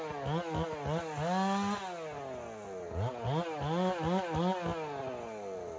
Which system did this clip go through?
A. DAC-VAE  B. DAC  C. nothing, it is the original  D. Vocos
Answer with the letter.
C